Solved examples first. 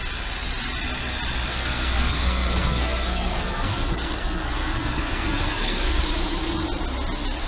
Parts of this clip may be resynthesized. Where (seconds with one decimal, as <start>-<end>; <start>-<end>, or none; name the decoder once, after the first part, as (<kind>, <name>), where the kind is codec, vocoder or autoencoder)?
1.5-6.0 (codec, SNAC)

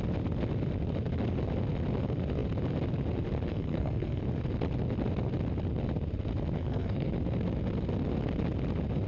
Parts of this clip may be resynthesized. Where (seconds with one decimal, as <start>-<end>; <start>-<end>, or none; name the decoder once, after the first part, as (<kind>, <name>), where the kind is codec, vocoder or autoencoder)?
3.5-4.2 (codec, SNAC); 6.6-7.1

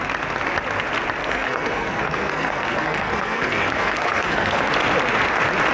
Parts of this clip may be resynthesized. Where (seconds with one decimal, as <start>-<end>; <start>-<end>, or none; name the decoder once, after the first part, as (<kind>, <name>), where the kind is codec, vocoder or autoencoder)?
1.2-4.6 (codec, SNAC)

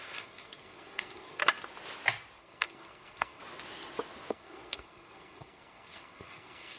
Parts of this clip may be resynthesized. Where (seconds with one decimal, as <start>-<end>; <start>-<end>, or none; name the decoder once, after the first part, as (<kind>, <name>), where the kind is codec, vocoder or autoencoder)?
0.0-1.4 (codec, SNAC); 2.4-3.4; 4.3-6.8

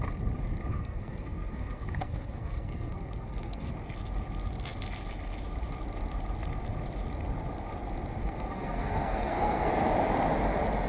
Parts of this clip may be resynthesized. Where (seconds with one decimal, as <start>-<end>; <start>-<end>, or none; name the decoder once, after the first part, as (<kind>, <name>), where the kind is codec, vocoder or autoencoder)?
0.7-3.7 (codec, SNAC); 8.2-9.7

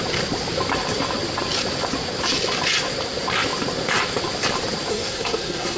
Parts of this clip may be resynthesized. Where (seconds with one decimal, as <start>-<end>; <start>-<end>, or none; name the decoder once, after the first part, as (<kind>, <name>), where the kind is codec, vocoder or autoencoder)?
4.9-5.8 (codec, SNAC)